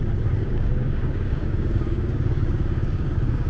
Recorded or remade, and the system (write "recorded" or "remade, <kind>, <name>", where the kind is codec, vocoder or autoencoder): remade, codec, DAC